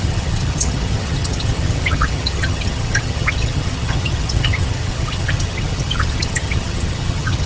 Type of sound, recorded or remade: remade